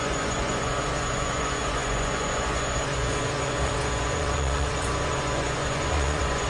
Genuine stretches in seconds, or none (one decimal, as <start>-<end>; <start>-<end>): none